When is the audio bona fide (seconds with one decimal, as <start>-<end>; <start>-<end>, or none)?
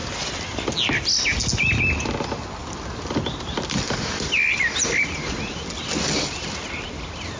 0.6-2.6; 5.9-7.4